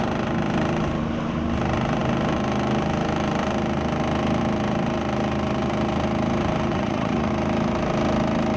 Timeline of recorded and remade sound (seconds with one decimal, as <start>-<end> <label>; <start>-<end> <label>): 0.0-6.7 recorded; 6.7-7.3 remade; 7.3-8.6 recorded